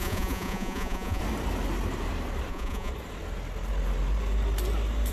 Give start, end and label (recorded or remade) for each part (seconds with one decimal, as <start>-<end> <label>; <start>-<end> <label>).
0.0-1.2 remade; 1.2-2.5 recorded; 2.5-2.9 remade; 2.9-5.1 recorded